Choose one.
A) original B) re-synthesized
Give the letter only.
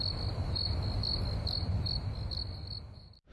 A